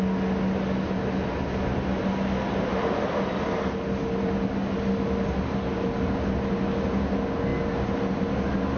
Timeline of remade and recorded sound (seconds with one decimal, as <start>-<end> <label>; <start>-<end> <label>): 0.0-8.8 recorded